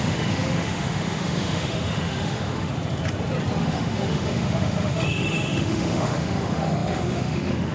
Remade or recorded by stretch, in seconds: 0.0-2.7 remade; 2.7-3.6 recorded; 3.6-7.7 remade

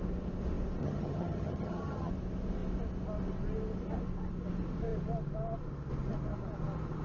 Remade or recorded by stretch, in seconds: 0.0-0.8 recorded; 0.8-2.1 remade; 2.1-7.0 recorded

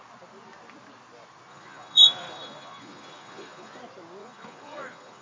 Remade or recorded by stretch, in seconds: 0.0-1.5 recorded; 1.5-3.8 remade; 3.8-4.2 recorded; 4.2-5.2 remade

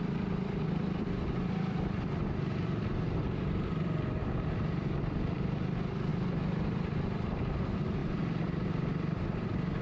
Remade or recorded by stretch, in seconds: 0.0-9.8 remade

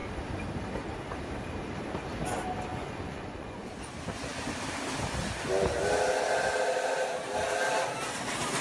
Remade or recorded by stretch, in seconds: 0.0-2.7 recorded; 2.7-3.7 remade; 3.7-8.6 recorded

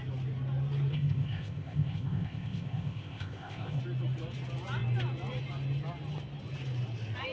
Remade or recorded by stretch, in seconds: 0.0-0.9 recorded; 0.9-3.8 remade; 3.8-7.3 recorded

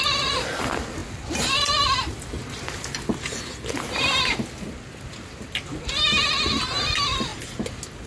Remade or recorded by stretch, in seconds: 0.0-8.1 recorded